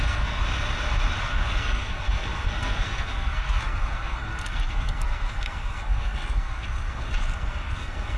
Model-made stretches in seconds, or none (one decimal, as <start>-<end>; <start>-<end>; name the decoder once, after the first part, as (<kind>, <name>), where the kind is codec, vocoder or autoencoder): 0.0-0.4 (codec, SNAC); 1.2-8.2